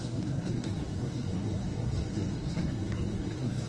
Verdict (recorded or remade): remade